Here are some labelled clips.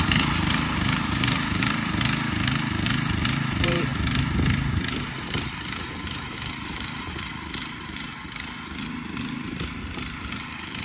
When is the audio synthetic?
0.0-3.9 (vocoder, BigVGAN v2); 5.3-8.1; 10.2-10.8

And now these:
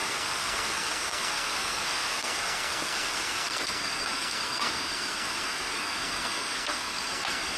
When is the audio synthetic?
0.0-7.6 (codec, SNAC)

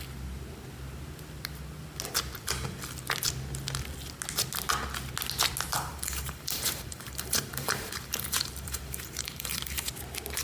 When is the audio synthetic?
5.9-9.9 (vocoder, BigVGAN v2)

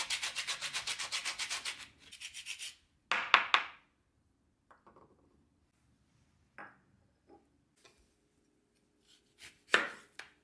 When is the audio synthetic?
none